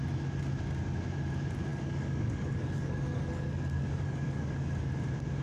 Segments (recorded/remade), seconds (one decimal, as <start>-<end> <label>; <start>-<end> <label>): 0.0-1.7 recorded; 1.7-4.9 remade; 4.9-5.4 recorded